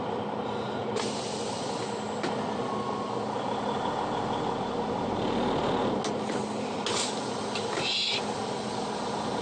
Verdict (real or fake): real